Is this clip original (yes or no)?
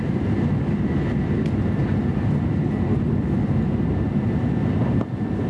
yes